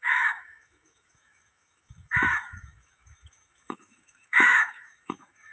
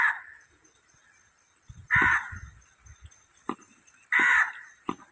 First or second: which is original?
second